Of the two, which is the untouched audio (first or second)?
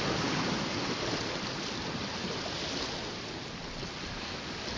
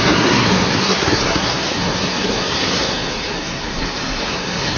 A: first